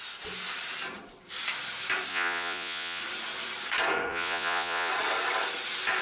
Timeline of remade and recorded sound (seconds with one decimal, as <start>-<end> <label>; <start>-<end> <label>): 0.0-2.1 recorded; 2.1-3.0 remade; 3.0-4.1 recorded; 4.1-4.9 remade; 4.9-6.0 recorded